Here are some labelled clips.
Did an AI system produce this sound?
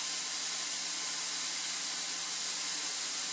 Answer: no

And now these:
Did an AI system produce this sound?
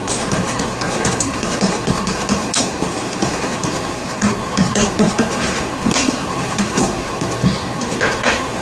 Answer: yes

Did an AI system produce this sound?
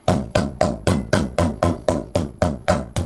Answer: yes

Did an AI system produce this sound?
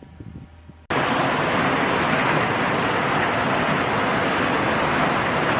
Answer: no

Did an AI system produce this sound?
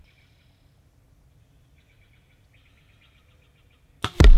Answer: no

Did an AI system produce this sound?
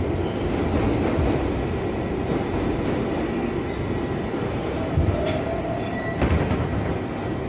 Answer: no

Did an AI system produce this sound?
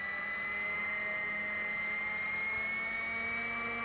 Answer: no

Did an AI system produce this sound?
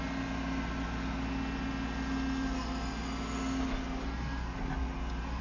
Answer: no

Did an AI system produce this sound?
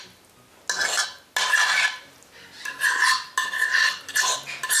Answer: no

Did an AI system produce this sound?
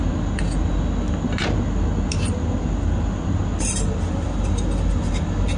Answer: no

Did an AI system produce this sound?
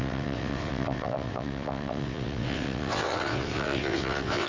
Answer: yes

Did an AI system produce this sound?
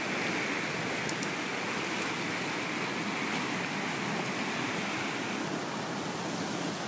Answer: no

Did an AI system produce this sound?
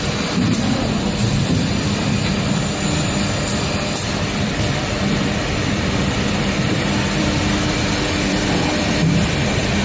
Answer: yes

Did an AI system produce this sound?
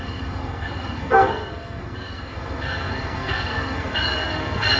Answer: yes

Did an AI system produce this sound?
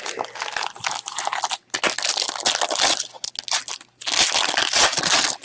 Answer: no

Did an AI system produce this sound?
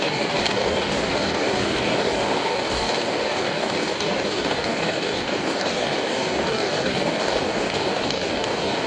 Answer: yes